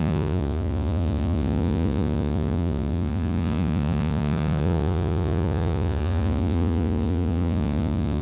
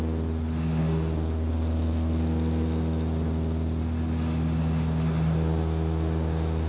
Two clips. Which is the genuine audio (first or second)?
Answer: second